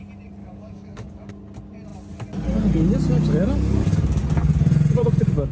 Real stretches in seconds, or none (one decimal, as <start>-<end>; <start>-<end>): 0.0-0.4; 1.3-5.5